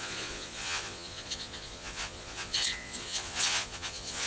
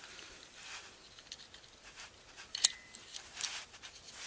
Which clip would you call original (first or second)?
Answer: second